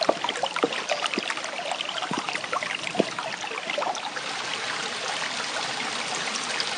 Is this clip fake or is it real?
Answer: real